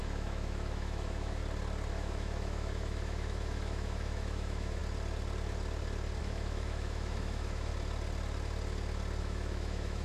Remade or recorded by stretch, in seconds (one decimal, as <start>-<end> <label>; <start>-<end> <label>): 0.0-1.4 remade; 1.4-1.9 recorded; 1.9-4.8 remade; 4.8-6.2 recorded; 6.2-7.7 remade; 7.7-9.2 recorded; 9.2-10.0 remade